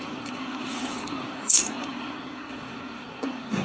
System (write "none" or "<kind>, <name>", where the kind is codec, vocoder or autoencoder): codec, SNAC